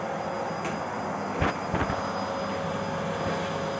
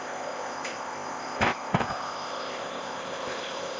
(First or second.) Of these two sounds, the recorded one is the first